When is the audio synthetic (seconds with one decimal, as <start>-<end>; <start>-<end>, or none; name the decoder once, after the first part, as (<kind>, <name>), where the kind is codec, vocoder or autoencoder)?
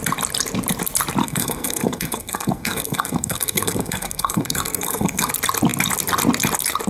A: 1.2-5.3 (codec, SNAC)